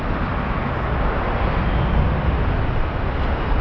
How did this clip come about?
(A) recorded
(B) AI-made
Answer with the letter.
A